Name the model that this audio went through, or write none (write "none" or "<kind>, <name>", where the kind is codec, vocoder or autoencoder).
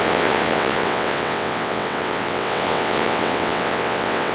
vocoder, WaveNeXt